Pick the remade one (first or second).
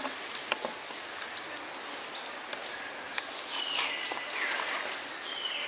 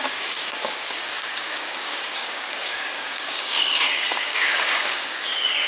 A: second